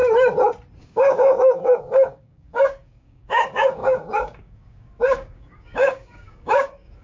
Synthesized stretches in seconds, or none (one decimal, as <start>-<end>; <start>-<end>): 0.8-7.0